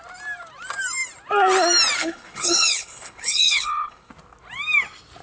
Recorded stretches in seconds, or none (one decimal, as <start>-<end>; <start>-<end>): 0.0-2.0; 4.1-5.2